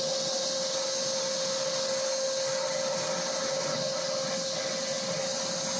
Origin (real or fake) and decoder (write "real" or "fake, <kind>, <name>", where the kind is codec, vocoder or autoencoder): real